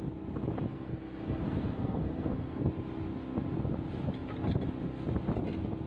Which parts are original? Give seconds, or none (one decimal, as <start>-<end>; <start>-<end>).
0.0-0.7; 2.7-5.9

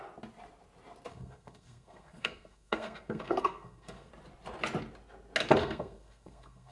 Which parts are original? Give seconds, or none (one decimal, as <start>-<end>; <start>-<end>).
0.0-1.1; 4.1-5.6